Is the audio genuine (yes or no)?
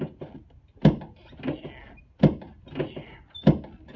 yes